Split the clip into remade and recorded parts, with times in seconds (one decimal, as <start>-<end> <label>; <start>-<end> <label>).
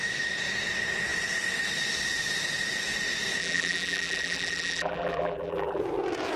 0.0-3.4 recorded; 3.4-5.8 remade; 5.8-6.4 recorded